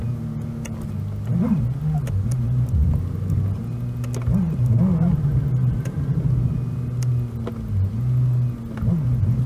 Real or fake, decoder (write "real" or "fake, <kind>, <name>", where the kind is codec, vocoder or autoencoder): real